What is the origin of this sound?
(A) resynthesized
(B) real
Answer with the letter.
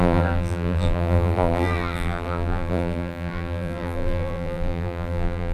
A